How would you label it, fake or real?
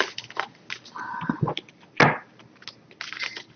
real